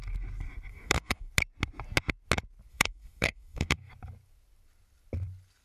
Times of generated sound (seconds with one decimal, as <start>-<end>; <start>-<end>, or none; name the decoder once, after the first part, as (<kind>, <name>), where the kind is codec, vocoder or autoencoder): 0.7-1.3 (codec, DAC); 2.7-3.9